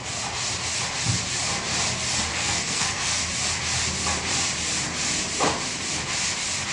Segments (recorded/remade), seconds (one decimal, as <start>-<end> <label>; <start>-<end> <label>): 0.0-2.3 recorded; 2.3-3.2 remade; 3.2-6.7 recorded